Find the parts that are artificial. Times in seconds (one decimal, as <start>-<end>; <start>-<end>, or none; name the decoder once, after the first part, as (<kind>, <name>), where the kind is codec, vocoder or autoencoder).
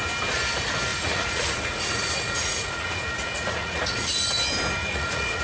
0.9-4.1 (vocoder, Vocos); 4.8-5.4